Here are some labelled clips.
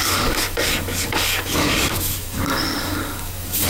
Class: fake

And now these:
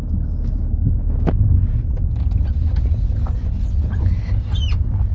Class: real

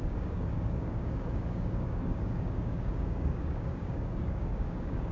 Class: fake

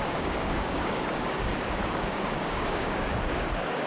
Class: fake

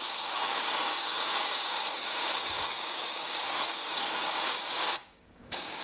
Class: fake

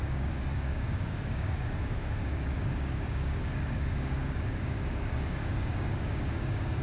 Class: fake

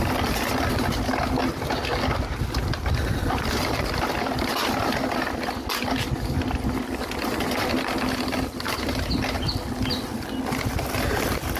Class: real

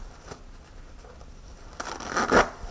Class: real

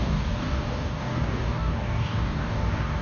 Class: fake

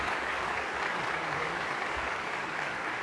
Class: fake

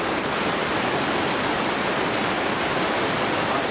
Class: real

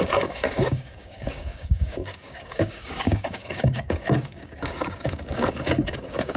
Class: fake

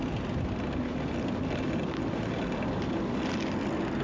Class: real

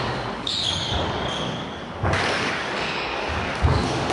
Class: fake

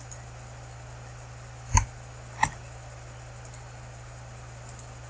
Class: real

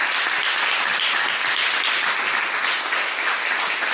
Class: real